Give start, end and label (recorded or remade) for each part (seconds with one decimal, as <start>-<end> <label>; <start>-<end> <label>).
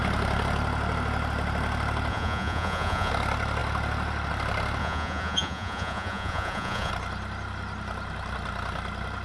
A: 0.0-2.1 recorded; 2.1-3.1 remade; 3.1-4.8 recorded; 4.8-6.9 remade; 6.9-9.2 recorded